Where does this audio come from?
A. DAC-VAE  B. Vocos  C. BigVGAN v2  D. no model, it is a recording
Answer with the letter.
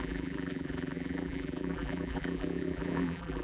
C